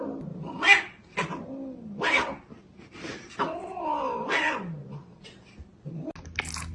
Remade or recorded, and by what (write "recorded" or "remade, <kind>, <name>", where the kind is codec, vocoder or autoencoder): recorded